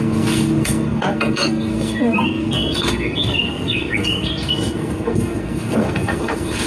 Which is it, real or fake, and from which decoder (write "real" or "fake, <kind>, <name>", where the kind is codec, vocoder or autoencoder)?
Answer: fake, codec, SNAC